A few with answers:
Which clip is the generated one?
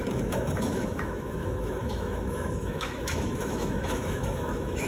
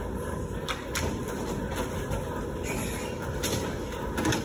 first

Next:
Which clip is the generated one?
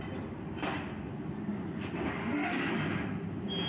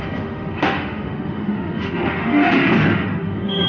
second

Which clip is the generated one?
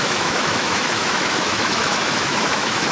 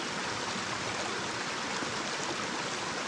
first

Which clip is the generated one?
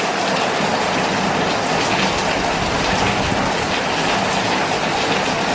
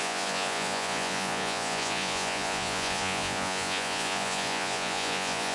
second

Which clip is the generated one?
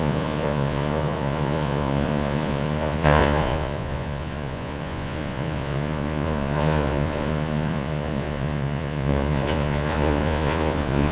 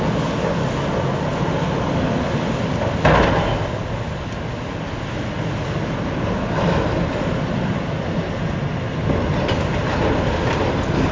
first